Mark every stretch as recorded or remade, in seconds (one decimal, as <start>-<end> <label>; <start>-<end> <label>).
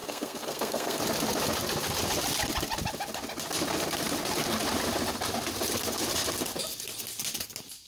0.0-1.0 remade; 1.0-7.9 recorded